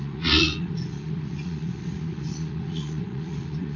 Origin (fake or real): fake